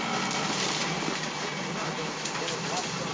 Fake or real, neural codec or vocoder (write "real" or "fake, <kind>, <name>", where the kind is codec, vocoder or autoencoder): real